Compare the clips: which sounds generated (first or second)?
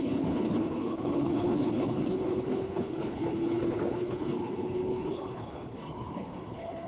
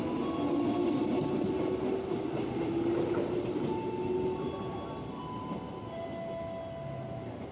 first